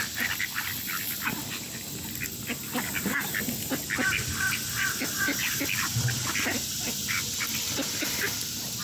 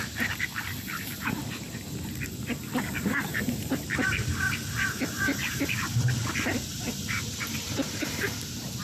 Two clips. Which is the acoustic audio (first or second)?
first